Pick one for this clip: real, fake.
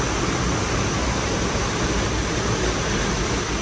real